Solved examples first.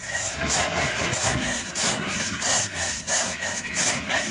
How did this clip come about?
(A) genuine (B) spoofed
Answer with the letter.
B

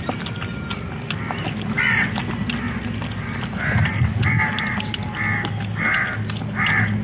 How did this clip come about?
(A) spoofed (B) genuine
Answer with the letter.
B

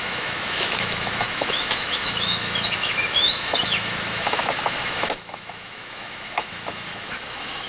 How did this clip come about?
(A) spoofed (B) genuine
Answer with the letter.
A